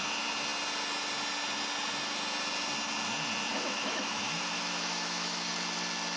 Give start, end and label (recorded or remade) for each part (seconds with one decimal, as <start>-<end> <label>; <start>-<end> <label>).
0.0-3.5 recorded; 3.5-5.5 remade; 5.5-6.2 recorded